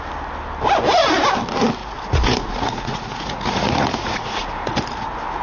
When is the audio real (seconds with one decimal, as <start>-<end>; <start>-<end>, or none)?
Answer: 0.0-1.8; 4.3-5.4